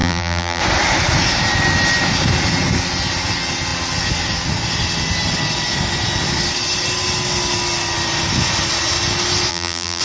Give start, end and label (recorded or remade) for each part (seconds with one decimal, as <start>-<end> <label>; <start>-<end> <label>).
0.0-0.6 remade; 0.6-9.5 recorded; 9.5-10.0 remade